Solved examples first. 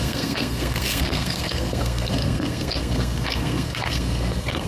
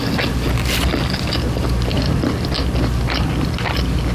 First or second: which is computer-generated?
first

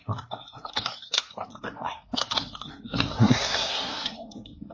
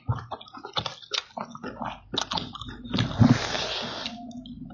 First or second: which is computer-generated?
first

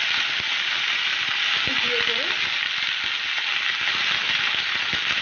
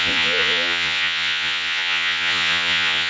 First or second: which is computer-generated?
second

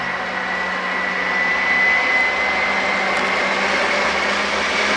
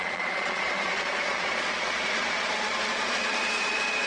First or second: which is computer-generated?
second